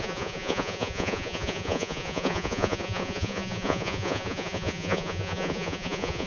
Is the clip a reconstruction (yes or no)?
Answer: yes